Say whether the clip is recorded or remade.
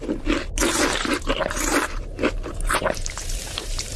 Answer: remade